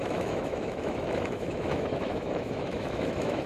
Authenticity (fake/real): fake